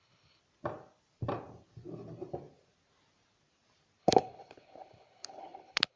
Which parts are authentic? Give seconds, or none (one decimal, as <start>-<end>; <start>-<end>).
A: 0.4-4.0